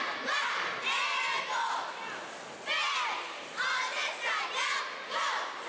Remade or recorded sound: recorded